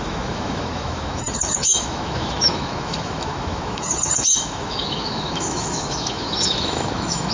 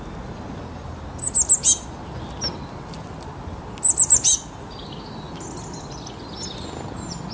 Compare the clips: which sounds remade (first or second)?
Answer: first